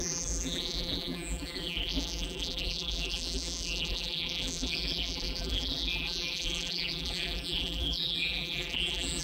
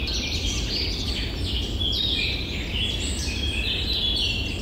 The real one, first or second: second